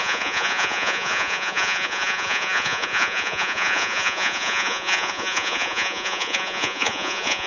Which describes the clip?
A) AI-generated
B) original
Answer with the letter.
A